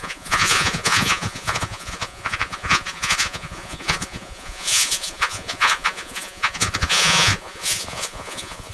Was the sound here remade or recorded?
remade